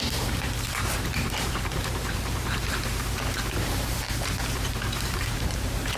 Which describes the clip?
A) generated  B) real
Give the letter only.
A